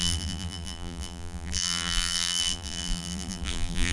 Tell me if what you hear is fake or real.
fake